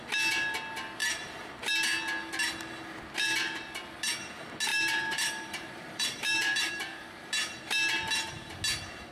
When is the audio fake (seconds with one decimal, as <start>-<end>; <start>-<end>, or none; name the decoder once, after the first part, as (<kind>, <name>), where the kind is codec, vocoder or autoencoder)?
1.0-1.7 (vocoder, BigVGAN v2); 4.7-6.7